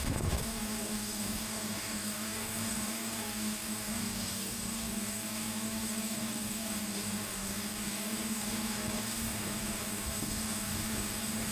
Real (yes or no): no